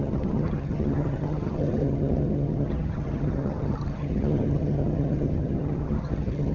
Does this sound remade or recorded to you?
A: remade